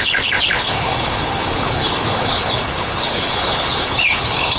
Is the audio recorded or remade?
remade